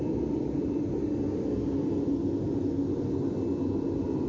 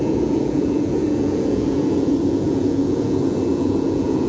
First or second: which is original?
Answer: first